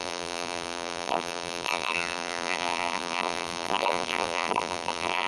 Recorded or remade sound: remade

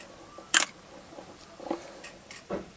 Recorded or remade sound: remade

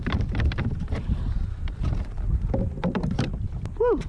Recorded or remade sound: remade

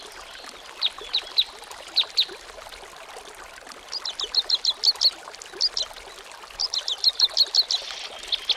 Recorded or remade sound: recorded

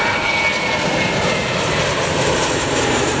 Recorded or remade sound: remade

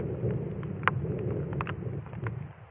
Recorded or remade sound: recorded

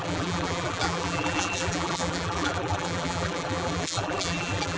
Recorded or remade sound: remade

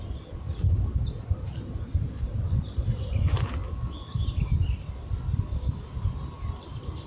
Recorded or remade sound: recorded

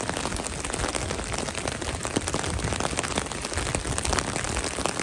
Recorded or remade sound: recorded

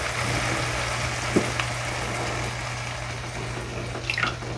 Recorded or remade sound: recorded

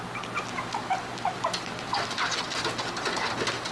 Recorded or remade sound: recorded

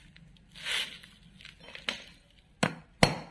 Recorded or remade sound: recorded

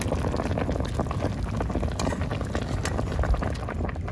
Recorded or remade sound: recorded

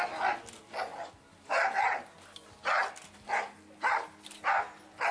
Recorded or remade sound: recorded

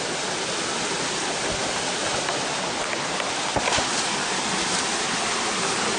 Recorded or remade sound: recorded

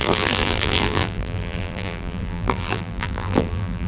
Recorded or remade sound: remade